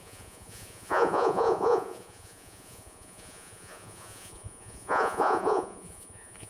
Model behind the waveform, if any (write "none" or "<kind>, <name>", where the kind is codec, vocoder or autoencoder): vocoder, Vocos